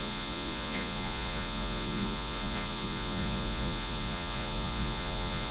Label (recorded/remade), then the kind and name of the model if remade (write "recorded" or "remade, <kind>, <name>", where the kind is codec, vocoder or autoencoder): remade, vocoder, Vocos